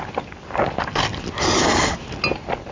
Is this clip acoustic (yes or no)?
yes